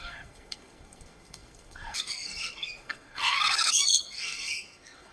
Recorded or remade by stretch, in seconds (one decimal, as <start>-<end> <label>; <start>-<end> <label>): 0.0-5.1 remade